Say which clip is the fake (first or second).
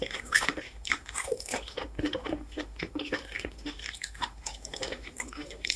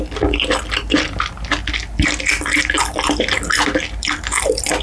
first